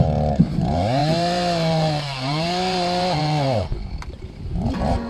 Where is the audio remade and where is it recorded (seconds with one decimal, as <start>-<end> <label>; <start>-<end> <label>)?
0.0-3.7 remade; 3.7-4.4 recorded; 4.4-5.1 remade